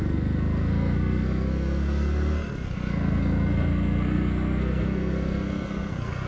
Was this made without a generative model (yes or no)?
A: no